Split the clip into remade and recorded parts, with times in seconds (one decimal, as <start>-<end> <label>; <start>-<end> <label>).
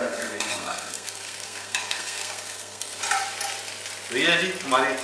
0.0-3.0 remade; 3.0-5.0 recorded